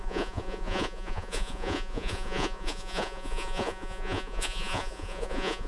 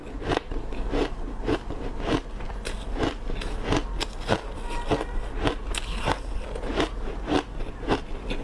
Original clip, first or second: second